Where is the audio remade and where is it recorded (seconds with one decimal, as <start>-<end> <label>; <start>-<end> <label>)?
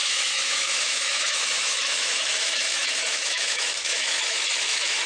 0.0-5.1 remade